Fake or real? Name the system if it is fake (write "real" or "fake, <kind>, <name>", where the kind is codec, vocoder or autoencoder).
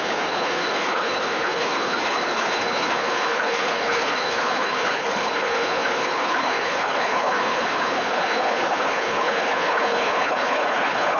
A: fake, codec, HILCodec